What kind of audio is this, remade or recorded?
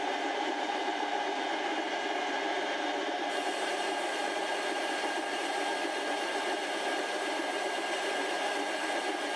remade